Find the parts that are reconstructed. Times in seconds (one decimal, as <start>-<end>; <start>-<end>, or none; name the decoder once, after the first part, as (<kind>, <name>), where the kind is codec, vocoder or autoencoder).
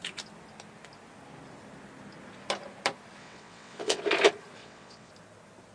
3.2-4.0 (vocoder, WaveNeXt); 4.6-5.1